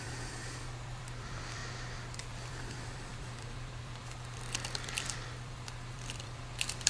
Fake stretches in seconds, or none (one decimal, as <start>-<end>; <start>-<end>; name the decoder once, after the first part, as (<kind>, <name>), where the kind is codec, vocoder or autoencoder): 0.0-1.6 (vocoder, BigVGAN v2); 2.2-6.9